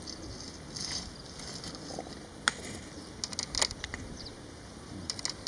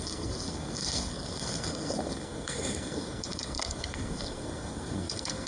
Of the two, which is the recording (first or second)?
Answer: first